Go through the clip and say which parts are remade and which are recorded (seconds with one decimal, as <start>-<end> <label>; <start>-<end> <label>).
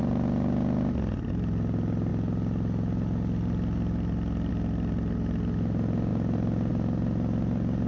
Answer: 0.0-7.9 recorded